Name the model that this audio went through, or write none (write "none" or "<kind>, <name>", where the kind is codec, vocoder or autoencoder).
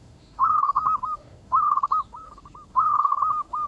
autoencoder, DAC-VAE